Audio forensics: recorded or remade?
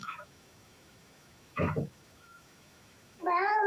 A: remade